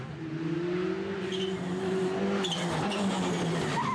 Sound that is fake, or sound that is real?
real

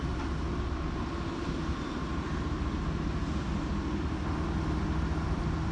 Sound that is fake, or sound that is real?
real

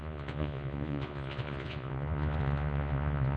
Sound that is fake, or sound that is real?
fake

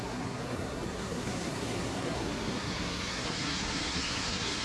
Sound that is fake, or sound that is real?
fake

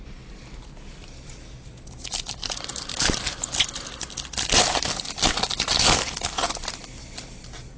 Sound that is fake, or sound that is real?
real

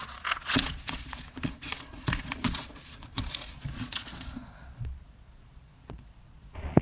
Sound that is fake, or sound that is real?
fake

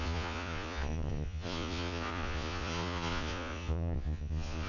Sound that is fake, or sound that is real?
fake